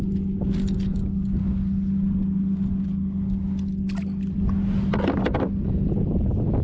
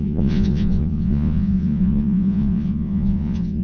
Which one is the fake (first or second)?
second